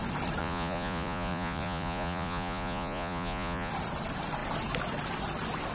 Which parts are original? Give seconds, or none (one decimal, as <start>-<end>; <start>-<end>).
0.0-0.4; 3.7-5.7